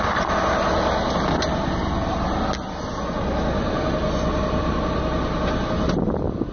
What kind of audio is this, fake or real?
real